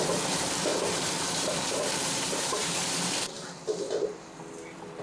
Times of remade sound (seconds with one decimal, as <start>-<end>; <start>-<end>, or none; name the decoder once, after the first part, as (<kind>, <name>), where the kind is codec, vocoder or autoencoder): 0.7-3.4 (vocoder, BigVGAN v2)